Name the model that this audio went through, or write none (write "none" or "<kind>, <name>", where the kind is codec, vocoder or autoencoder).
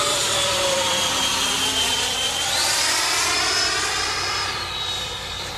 vocoder, BigVGAN v2